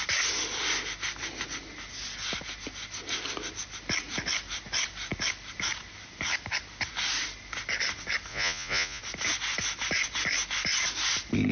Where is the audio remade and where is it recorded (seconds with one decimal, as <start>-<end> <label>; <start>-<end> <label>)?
0.0-8.3 recorded; 8.3-9.0 remade; 9.0-11.5 recorded